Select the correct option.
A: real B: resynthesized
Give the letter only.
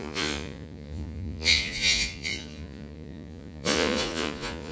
B